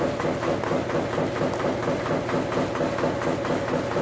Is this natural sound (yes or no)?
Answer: yes